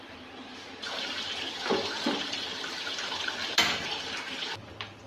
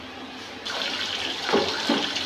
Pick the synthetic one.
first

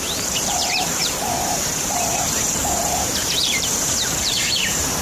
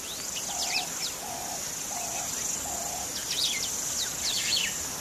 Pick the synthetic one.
first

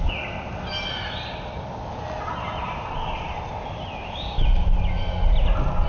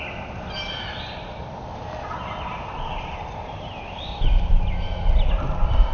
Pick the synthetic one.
second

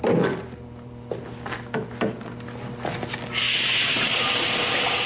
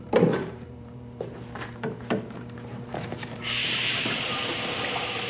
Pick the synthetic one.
second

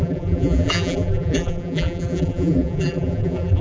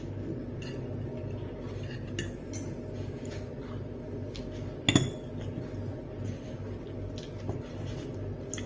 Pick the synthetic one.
first